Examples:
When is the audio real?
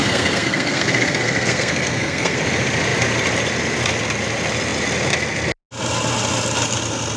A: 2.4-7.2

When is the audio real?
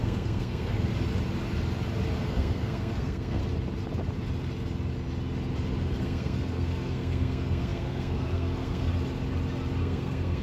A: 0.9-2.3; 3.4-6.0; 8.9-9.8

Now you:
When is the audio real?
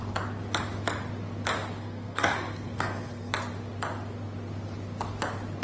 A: 0.0-1.8; 3.3-5.6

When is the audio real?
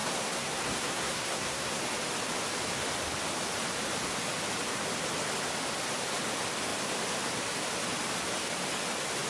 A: 1.8-9.3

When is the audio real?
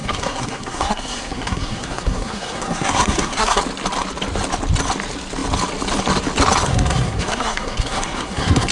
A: 3.6-6.7